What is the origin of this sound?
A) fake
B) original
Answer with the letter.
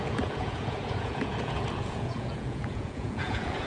A